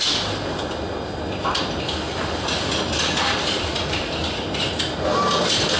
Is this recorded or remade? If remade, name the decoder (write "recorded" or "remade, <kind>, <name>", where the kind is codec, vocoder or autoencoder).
recorded